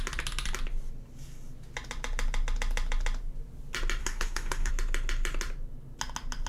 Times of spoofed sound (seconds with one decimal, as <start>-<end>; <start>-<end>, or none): 4.0-4.7